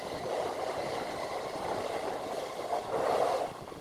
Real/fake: real